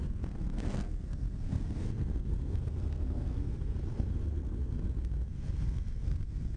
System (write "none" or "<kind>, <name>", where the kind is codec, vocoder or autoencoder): codec, SNAC